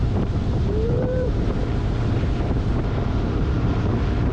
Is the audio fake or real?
fake